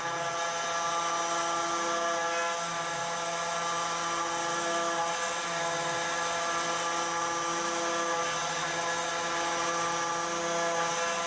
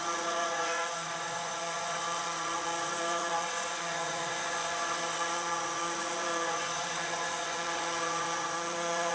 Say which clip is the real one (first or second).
first